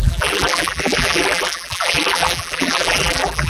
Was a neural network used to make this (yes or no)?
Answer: yes